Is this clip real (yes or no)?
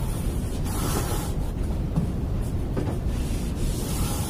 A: no